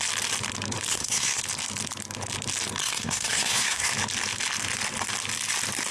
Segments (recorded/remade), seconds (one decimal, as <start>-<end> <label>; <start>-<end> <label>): 0.0-0.9 recorded; 0.9-1.4 remade; 1.4-2.8 recorded; 2.8-3.9 remade; 3.9-5.9 recorded